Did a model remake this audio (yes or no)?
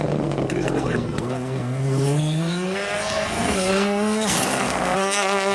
yes